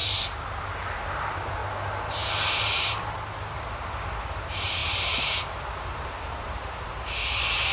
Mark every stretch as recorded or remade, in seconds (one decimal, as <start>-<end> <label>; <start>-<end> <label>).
0.0-1.6 remade; 1.6-4.2 recorded; 4.2-7.7 remade

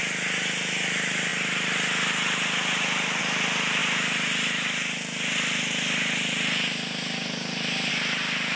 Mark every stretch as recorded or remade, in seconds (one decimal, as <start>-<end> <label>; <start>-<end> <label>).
0.0-8.6 recorded